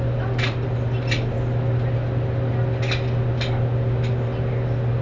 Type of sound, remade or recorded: recorded